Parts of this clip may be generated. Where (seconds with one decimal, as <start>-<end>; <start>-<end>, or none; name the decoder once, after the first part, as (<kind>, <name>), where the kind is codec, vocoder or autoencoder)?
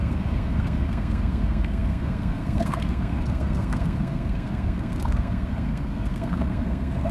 0.0-7.1 (codec, SNAC)